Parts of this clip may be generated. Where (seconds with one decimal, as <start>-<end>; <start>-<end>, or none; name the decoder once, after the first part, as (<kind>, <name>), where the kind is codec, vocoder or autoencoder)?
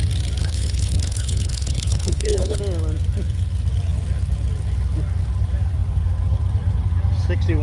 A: 0.4-2.6 (codec, HILCodec)